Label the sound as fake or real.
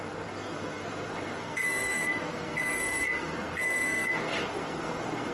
fake